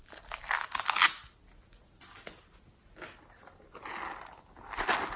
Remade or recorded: recorded